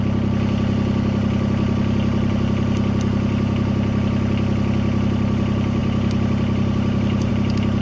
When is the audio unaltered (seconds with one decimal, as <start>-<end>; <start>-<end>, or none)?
0.0-5.8; 7.3-7.8